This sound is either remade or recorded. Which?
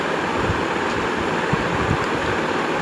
recorded